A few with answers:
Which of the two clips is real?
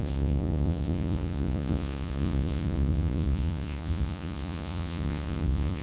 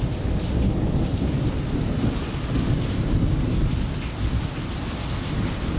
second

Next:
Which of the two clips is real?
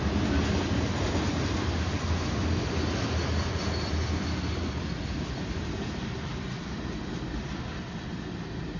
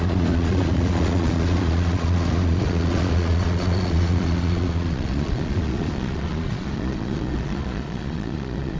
first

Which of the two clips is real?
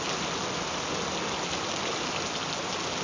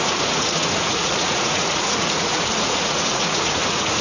first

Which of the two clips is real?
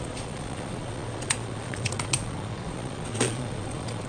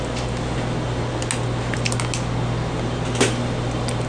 second